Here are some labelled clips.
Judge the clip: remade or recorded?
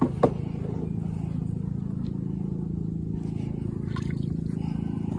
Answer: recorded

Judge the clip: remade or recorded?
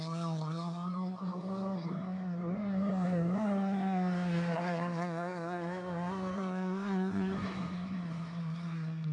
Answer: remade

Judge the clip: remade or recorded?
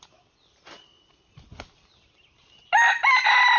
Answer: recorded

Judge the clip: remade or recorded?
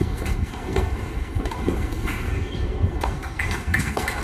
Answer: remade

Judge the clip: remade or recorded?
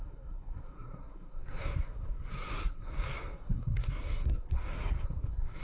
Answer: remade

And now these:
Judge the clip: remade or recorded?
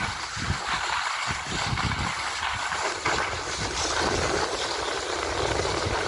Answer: recorded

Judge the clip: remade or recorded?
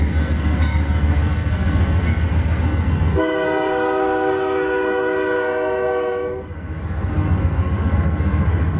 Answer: remade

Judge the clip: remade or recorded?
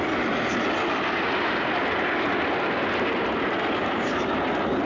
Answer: recorded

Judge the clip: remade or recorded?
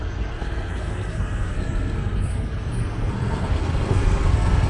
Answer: remade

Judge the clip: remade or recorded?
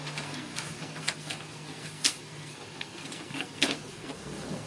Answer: remade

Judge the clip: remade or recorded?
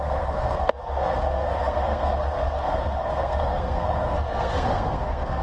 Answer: remade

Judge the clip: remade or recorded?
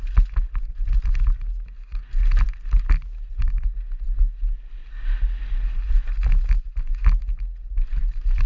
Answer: recorded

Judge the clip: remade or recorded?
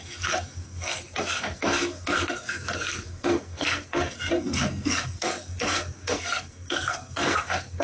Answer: remade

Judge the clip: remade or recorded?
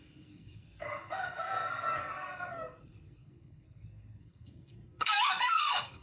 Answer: remade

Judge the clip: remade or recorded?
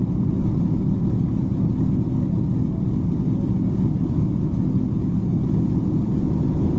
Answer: recorded